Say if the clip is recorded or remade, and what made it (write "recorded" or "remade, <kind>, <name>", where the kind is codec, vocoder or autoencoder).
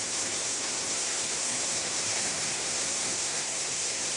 remade, codec, SNAC